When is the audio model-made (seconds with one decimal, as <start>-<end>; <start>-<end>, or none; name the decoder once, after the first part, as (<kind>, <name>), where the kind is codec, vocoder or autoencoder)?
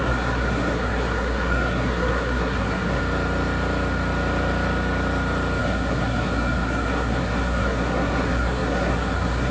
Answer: 0.0-3.0 (codec, SNAC); 5.6-9.5